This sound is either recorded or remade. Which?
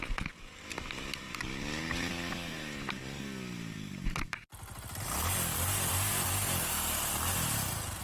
recorded